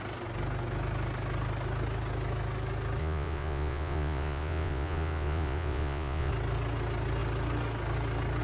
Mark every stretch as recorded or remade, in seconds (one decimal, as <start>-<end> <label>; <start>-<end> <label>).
0.0-3.0 recorded; 3.0-6.3 remade; 6.3-8.4 recorded